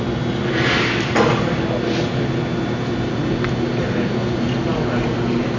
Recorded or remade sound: recorded